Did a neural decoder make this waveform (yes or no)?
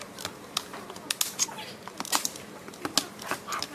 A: no